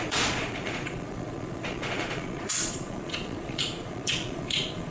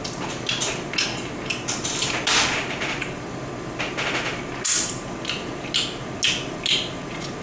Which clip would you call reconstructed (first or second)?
first